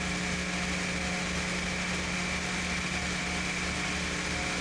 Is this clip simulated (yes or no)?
no